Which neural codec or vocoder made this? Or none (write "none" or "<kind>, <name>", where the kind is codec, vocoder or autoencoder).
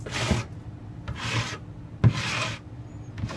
none